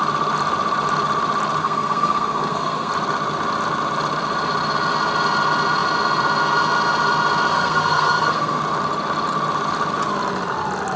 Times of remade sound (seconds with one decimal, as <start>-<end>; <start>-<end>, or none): 1.6-2.9; 7.5-8.6